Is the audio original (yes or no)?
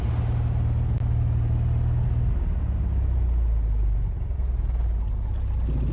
yes